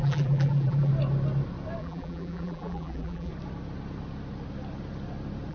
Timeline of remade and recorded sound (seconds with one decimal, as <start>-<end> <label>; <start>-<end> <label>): 0.0-0.9 remade; 0.9-1.8 recorded; 1.8-3.3 remade; 3.3-5.5 recorded